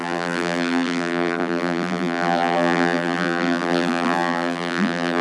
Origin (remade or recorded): remade